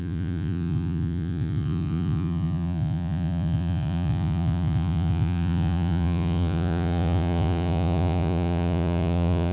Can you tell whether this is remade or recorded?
remade